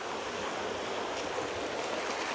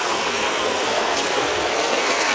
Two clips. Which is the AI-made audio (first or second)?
second